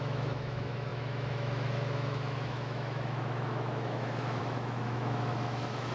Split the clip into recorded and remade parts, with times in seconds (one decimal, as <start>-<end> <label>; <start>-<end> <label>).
0.0-5.9 remade